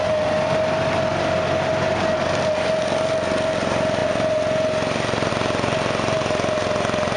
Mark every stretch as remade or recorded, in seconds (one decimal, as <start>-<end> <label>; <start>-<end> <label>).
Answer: 0.0-7.2 recorded